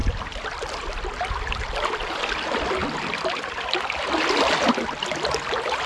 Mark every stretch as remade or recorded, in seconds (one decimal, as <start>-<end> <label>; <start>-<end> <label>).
0.0-5.9 recorded

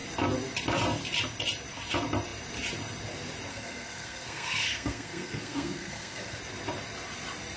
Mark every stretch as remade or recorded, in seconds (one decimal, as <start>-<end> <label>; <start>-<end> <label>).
0.0-3.5 recorded; 3.5-6.4 remade; 6.4-7.6 recorded

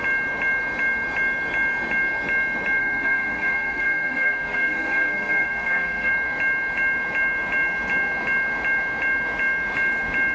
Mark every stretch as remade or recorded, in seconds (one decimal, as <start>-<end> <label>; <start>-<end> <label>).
0.0-2.8 recorded; 2.8-6.1 remade; 6.1-10.3 recorded

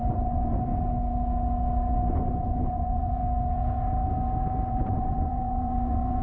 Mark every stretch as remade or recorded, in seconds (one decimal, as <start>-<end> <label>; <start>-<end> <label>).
0.0-0.7 remade; 0.7-2.1 recorded; 2.1-3.2 remade; 3.2-4.7 recorded; 4.7-6.2 remade

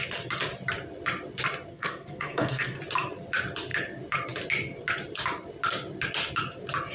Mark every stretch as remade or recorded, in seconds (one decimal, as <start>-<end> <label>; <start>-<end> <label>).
0.0-1.7 recorded; 1.7-2.8 remade; 2.8-6.9 recorded

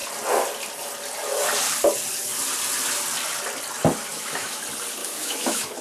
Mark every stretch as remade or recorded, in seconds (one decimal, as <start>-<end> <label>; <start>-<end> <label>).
0.0-4.1 recorded; 4.1-4.6 remade; 4.6-5.0 recorded; 5.0-5.8 remade